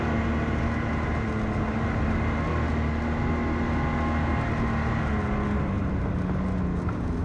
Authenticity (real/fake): real